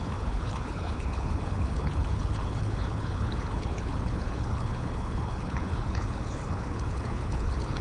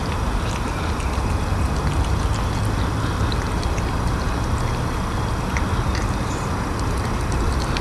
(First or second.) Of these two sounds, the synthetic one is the first